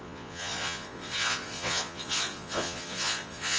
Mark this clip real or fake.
fake